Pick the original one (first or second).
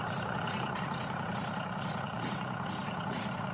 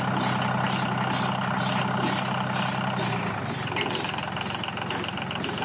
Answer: second